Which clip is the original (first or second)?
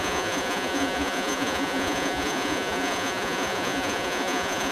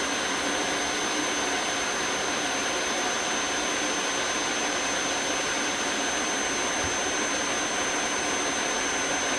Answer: second